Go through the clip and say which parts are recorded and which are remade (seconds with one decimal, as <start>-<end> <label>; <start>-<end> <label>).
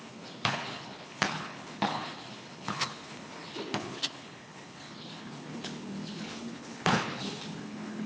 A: 0.0-8.1 remade